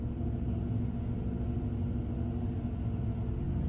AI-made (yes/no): no